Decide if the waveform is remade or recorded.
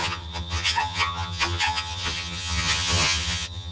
remade